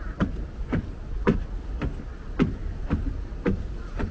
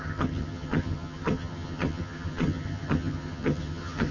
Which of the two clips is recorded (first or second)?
first